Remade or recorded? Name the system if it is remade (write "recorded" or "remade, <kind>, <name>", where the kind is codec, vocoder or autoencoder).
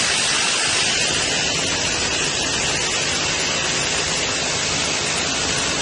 recorded